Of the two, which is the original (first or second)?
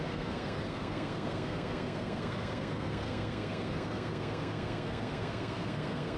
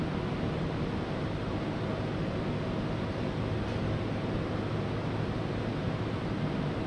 second